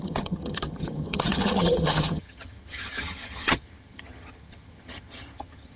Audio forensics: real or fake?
fake